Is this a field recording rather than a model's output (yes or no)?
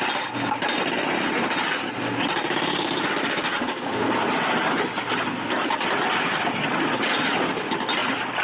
yes